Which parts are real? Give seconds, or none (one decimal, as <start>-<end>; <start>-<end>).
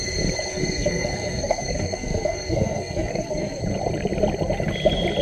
0.0-0.5; 3.6-5.2